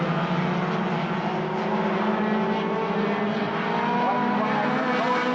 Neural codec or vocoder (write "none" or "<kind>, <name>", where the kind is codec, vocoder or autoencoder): none